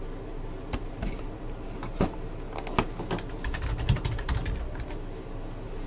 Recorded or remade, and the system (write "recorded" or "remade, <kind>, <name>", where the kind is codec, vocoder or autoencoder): recorded